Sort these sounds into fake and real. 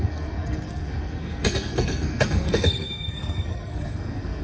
fake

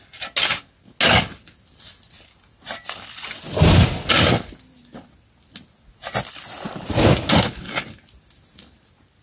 real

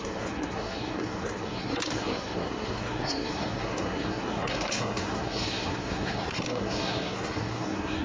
fake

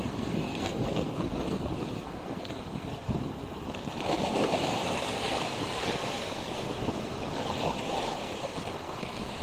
fake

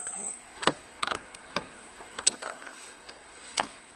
fake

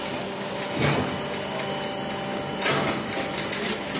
real